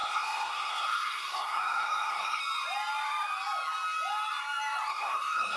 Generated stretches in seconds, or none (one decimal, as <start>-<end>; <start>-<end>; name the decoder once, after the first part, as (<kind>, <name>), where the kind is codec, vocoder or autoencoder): 0.0-2.4 (codec, SNAC); 4.9-5.6